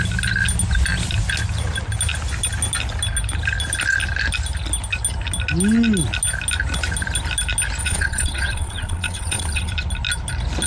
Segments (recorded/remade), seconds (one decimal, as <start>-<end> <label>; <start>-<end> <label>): 0.0-7.8 recorded; 7.8-9.7 remade; 9.7-10.7 recorded